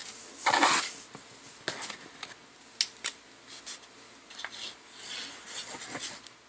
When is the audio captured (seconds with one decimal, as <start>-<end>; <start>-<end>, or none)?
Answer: 0.0-6.5